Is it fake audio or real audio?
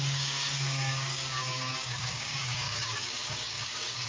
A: fake